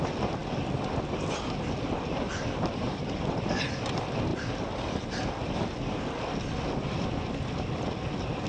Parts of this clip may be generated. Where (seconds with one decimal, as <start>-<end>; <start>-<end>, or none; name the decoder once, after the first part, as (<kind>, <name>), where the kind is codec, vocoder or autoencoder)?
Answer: none